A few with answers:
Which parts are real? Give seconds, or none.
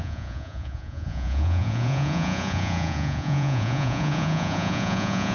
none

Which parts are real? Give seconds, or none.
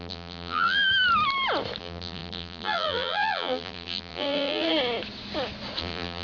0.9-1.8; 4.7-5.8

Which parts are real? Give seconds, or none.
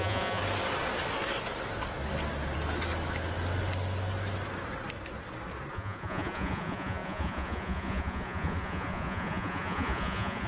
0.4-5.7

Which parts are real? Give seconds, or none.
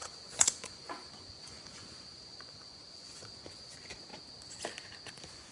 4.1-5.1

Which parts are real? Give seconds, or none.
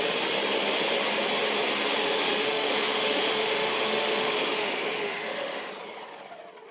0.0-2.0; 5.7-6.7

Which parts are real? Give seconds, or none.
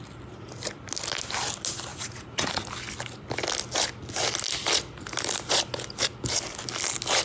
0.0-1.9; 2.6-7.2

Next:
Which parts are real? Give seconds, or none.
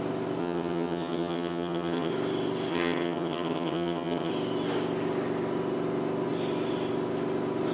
0.0-0.4; 2.1-2.7; 4.3-7.7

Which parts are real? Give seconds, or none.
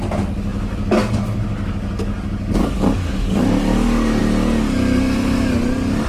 0.0-0.5; 4.2-6.1